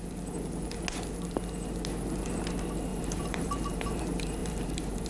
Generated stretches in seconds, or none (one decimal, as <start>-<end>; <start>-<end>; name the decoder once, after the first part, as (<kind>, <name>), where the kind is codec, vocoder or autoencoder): 2.9-4.0 (vocoder, BigVGAN v2); 4.4-5.1